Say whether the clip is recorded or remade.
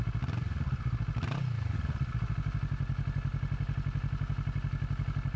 recorded